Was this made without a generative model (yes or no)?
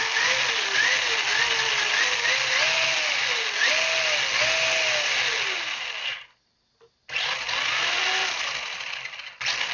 yes